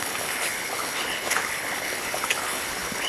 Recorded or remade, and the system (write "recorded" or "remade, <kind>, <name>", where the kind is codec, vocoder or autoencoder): remade, codec, HILCodec